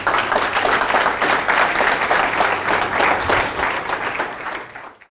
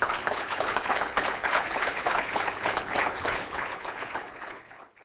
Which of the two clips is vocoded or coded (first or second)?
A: second